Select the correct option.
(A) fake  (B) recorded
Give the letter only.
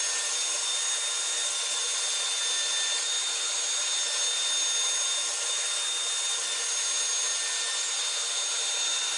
B